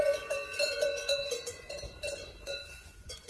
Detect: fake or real fake